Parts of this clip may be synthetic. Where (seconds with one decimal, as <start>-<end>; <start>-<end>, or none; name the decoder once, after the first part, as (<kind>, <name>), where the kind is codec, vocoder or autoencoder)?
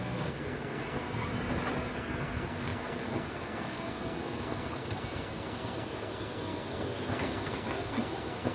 0.0-1.2 (codec, SNAC); 1.9-8.5